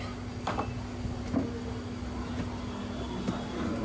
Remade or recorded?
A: recorded